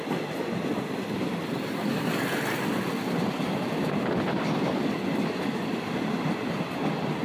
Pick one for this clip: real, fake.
real